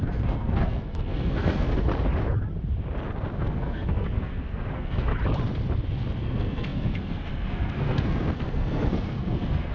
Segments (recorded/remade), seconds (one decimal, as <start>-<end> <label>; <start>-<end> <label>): 0.0-1.9 remade; 1.9-3.4 recorded; 3.4-5.1 remade; 5.1-6.2 recorded; 6.2-9.7 remade